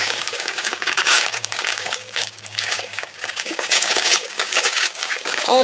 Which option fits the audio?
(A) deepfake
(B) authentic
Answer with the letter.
A